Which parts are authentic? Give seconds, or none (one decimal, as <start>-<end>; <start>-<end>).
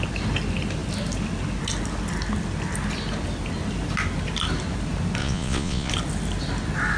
0.0-5.2; 5.9-7.0